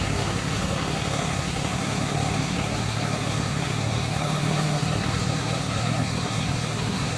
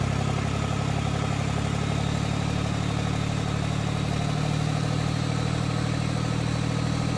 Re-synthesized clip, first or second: first